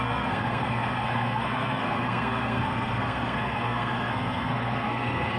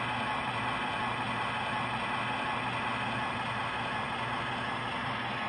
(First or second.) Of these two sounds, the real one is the second